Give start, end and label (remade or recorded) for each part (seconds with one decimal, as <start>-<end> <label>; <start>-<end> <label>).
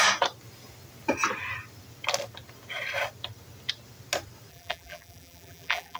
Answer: 0.0-4.5 recorded; 4.5-6.0 remade